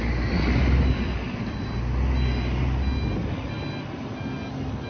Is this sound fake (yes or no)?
no